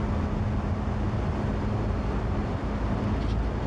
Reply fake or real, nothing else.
real